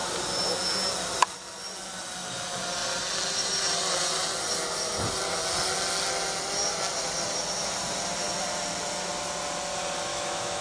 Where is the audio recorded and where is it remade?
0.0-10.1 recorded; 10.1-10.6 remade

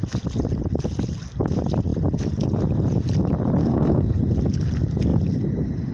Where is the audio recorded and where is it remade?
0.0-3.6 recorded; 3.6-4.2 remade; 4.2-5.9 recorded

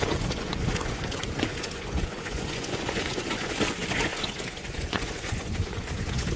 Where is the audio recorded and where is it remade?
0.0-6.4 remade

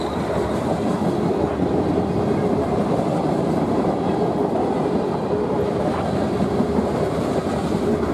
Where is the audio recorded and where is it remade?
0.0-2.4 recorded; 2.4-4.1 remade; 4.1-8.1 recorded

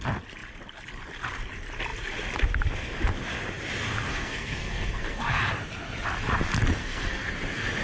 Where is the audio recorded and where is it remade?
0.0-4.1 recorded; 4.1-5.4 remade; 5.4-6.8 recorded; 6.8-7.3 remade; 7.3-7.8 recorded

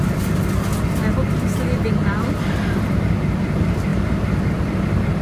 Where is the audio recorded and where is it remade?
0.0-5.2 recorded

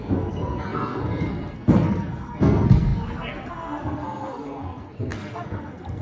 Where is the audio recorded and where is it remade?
0.0-6.0 remade

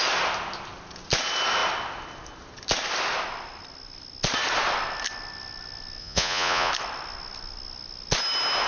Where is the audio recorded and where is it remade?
0.0-6.0 recorded; 6.0-6.7 remade; 6.7-8.7 recorded